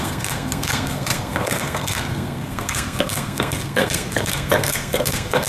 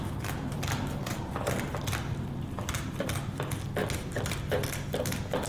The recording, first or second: second